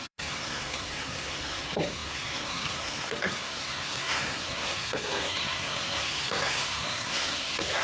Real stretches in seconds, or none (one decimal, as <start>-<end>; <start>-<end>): none